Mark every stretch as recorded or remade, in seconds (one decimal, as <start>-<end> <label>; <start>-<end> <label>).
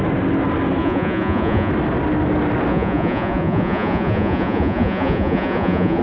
0.0-0.8 recorded; 0.8-1.7 remade; 1.7-2.7 recorded; 2.7-6.0 remade